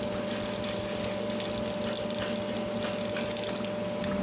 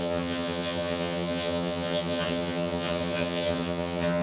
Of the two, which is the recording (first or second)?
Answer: first